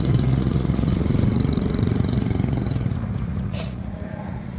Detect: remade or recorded remade